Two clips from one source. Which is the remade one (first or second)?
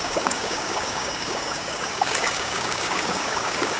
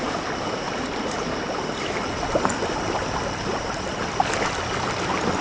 first